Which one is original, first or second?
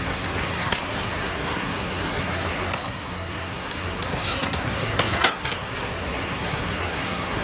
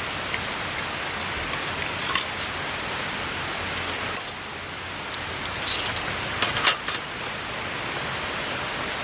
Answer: second